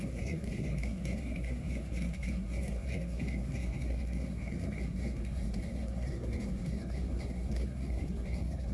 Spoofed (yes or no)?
yes